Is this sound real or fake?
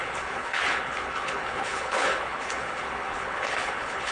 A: fake